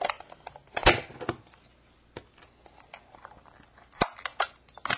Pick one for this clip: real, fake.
real